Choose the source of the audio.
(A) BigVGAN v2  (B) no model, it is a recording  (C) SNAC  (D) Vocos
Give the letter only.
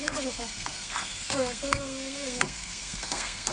C